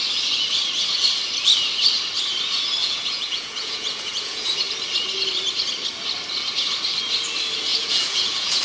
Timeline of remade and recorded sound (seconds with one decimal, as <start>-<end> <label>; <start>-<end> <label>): 0.0-2.8 recorded; 2.8-4.5 remade; 4.5-7.7 recorded; 7.7-8.6 remade